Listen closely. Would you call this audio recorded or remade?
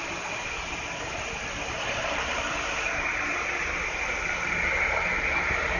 recorded